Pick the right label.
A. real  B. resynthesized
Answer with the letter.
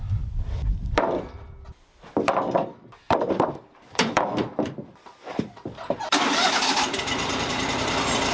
B